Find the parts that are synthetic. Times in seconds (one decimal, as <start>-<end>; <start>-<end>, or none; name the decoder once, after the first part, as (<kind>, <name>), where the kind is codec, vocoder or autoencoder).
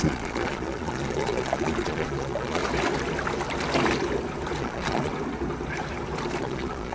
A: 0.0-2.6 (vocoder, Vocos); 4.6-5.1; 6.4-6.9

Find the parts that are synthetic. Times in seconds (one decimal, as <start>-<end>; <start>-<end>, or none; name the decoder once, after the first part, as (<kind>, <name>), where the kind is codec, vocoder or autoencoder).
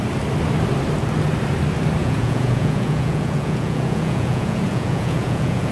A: 2.0-5.7 (vocoder, Vocos)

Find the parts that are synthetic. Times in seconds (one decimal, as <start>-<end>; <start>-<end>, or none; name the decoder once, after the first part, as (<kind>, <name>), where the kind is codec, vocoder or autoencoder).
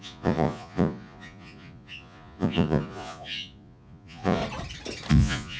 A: 0.0-4.4 (vocoder, Vocos); 5.1-5.6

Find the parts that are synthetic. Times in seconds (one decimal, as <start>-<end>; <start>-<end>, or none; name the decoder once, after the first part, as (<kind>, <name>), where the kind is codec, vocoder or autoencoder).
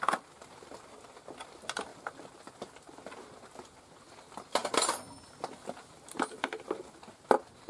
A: none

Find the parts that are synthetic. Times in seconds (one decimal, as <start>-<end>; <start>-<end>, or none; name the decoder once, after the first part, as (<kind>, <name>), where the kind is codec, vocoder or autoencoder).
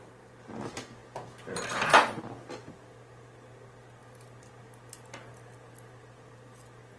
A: none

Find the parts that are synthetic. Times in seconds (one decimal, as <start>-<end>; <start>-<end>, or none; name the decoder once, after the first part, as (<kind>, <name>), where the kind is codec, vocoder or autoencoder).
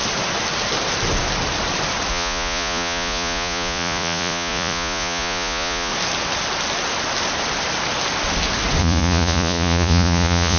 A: 2.1-5.9 (vocoder, Vocos); 8.8-10.6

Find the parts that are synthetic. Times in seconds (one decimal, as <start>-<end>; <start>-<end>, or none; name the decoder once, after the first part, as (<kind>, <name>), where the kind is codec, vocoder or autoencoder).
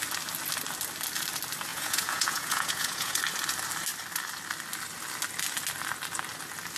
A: 1.7-3.2 (vocoder, Vocos)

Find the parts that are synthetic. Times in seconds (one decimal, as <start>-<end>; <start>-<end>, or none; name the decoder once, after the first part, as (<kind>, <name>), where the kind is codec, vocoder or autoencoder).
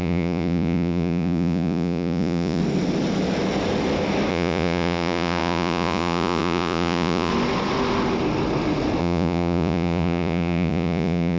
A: 0.0-2.6 (vocoder, Vocos); 4.3-7.3; 9.0-11.4